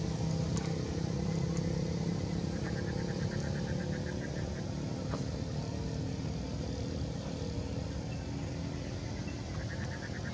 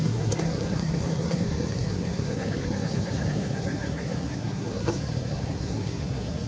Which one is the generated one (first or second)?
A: second